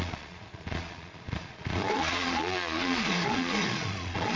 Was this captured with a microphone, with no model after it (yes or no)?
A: no